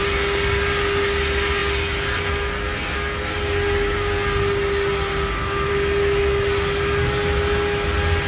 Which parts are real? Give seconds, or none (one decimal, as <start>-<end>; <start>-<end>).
0.0-8.3